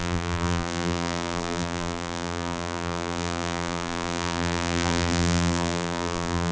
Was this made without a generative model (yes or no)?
no